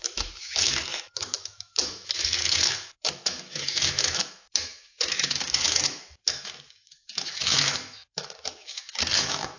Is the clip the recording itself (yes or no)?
no